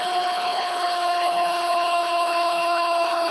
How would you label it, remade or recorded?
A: remade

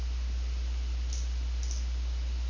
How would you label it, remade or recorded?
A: recorded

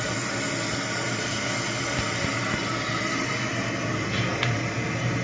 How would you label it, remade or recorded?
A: recorded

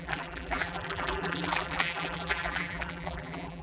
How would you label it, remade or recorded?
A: remade